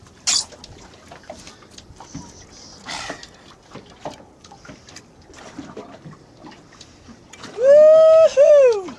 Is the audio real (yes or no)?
yes